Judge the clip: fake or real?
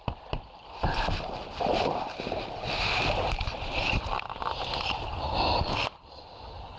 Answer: real